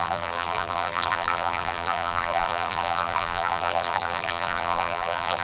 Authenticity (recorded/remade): remade